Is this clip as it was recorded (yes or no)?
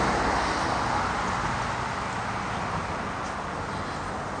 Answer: yes